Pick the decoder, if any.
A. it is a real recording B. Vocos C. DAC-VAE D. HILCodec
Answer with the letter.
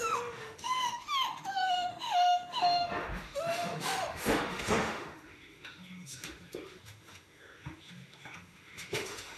C